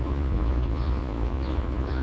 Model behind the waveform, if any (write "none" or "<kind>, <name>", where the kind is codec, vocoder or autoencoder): vocoder, Vocos